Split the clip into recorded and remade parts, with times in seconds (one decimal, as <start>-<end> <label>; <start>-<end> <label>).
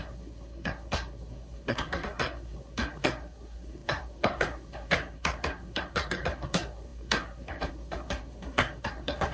0.0-9.3 remade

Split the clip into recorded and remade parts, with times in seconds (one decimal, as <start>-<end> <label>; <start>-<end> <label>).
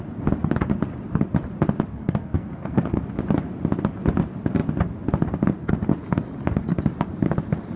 0.0-1.9 recorded; 1.9-3.0 remade; 3.0-7.8 recorded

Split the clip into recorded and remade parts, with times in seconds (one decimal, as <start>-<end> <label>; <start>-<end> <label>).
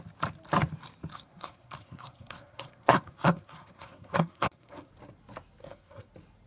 0.0-1.1 recorded; 1.1-4.9 remade; 4.9-5.6 recorded; 5.6-6.1 remade; 6.1-6.5 recorded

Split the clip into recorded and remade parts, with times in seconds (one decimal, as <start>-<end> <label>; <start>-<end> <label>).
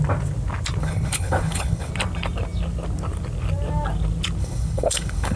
0.0-0.8 recorded; 0.8-1.9 remade; 1.9-4.4 recorded; 4.4-5.4 remade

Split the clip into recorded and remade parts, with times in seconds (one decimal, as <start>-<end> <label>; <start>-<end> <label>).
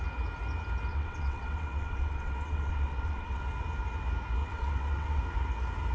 0.0-0.9 recorded; 0.9-3.4 remade; 3.4-4.4 recorded; 4.4-5.2 remade; 5.2-5.9 recorded